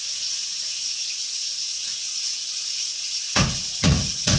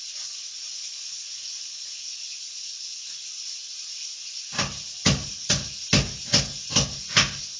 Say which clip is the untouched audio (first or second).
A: second